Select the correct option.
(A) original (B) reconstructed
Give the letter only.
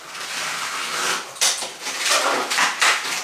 A